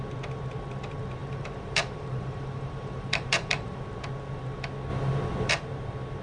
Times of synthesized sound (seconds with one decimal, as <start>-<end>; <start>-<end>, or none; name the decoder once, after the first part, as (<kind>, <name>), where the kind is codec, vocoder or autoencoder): 1.2-3.8 (vocoder, BigVGAN v2)